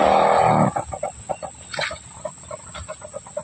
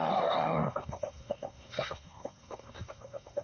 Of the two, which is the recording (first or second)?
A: first